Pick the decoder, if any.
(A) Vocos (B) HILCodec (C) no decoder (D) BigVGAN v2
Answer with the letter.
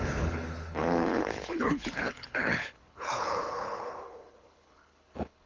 B